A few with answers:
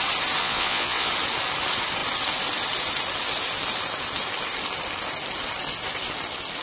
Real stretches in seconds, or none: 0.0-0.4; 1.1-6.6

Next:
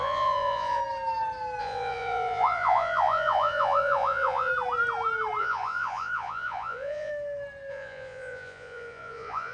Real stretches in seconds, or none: 0.8-1.6; 4.5-5.4; 7.1-7.7

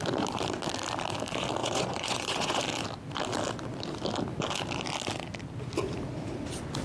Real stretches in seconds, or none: 0.0-1.6; 2.6-6.8

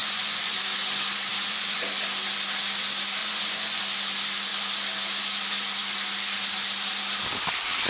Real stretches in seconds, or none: 0.6-1.3; 1.8-3.2; 3.8-7.9

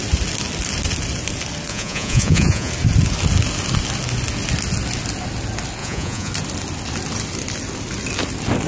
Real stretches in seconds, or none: 0.0-1.7; 2.7-5.8; 6.3-8.7

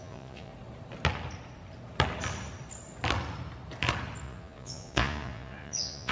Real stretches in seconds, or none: 0.5-4.2

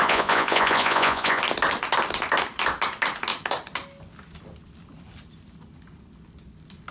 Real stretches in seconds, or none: 1.4-6.9

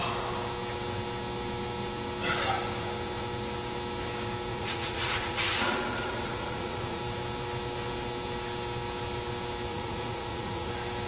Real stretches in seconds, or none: 0.0-4.5; 7.0-9.7; 10.7-11.1